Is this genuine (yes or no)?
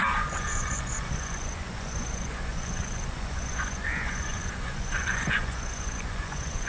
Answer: no